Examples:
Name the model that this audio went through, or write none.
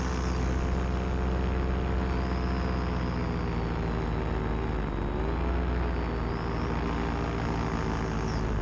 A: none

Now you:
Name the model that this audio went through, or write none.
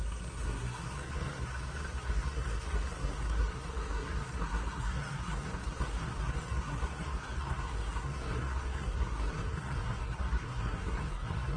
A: codec, SNAC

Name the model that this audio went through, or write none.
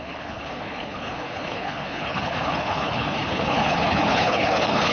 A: codec, HILCodec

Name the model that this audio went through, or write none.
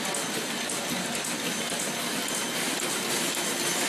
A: none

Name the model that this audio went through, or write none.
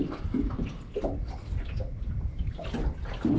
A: none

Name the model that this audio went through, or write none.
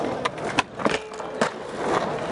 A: none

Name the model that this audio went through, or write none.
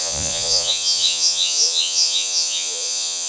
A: vocoder, Vocos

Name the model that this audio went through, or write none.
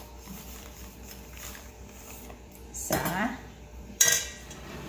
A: vocoder, BigVGAN v2